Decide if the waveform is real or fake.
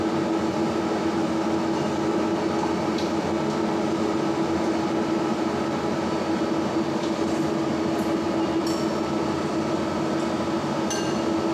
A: real